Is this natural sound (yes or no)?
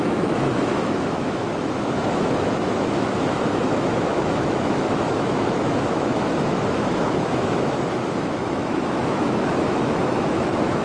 no